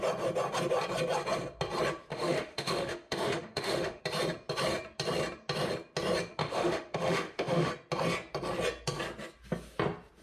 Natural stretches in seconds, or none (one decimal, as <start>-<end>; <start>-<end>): 0.0-2.1; 4.0-6.4; 7.7-10.2